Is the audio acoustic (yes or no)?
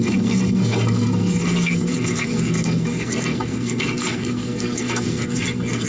no